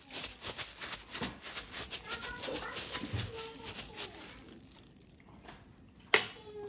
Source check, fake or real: real